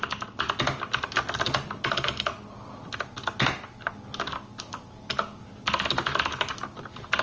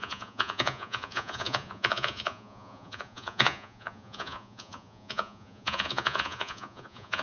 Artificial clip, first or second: second